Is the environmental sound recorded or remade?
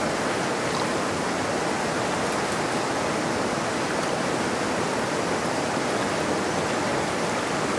recorded